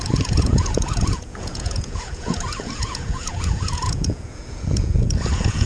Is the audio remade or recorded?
remade